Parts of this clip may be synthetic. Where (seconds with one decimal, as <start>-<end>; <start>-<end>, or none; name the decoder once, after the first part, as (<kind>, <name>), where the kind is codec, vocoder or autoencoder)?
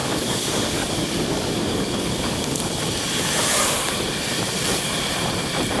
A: 0.0-2.6 (codec, DAC)